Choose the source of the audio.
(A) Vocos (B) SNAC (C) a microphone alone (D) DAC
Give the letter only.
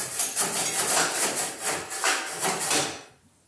C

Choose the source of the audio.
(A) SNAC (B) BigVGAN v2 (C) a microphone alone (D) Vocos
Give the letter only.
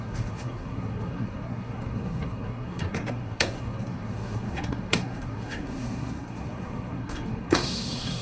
A